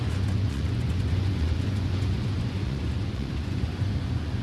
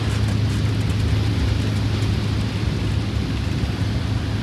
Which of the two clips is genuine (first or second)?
second